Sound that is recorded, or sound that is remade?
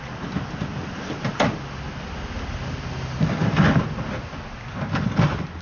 recorded